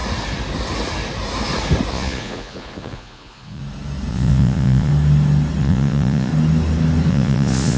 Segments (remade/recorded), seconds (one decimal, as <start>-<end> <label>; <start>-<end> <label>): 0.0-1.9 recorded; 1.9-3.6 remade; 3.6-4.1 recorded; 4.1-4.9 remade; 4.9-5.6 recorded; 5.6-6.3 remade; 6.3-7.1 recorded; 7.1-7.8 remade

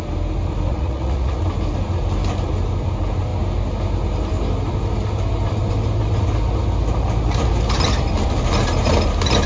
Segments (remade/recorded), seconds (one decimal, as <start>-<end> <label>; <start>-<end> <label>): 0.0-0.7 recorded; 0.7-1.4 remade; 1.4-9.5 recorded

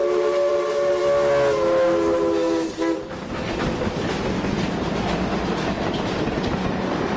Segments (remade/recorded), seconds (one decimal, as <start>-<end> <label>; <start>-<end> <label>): 0.0-7.2 recorded

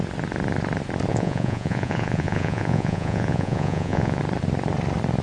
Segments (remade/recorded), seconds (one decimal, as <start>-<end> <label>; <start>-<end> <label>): 0.0-1.1 recorded; 1.1-4.2 remade; 4.2-5.2 recorded

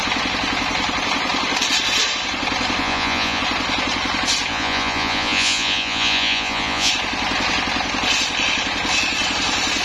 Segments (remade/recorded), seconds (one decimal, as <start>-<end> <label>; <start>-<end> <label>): 0.0-2.8 recorded; 2.8-3.4 remade; 3.4-4.5 recorded; 4.5-6.9 remade; 6.9-9.8 recorded